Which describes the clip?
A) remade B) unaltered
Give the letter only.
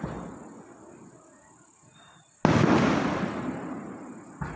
B